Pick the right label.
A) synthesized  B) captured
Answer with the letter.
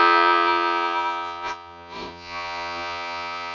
A